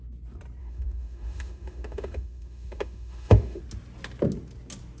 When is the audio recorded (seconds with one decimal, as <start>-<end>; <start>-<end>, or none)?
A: 0.0-0.6; 3.6-5.0